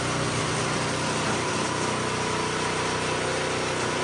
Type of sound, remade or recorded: recorded